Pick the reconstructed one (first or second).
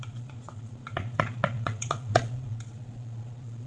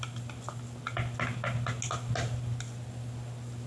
first